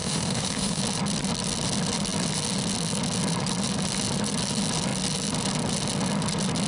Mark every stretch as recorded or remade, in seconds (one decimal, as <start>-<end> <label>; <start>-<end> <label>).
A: 0.0-0.8 remade; 0.8-6.7 recorded